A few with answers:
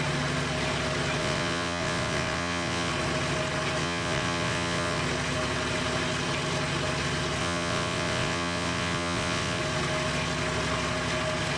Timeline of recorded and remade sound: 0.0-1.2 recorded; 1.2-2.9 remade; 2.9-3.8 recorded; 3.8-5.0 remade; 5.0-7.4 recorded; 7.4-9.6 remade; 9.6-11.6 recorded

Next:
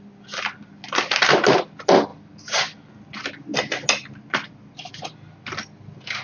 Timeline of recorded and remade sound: 0.0-2.1 recorded; 2.1-2.9 remade; 2.9-6.2 recorded

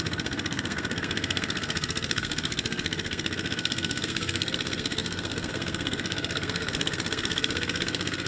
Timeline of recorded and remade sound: 0.0-8.3 remade

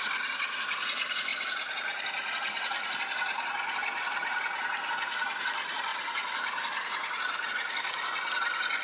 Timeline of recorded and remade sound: 0.0-1.3 recorded; 1.3-3.0 remade; 3.0-5.9 recorded; 5.9-7.5 remade; 7.5-8.8 recorded

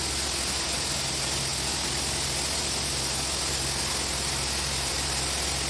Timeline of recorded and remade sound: 0.0-5.7 recorded

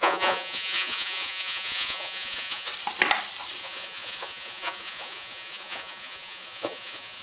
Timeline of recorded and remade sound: 0.0-2.7 remade; 2.7-3.6 recorded; 3.6-7.2 remade